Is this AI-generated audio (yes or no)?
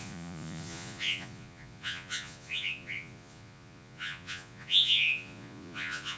yes